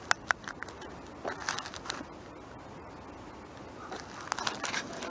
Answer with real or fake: real